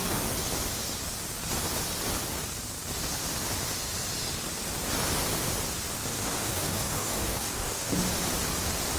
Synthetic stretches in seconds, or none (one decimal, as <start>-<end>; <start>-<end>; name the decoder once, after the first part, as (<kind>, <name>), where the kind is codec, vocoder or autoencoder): 6.1-7.9 (codec, DAC)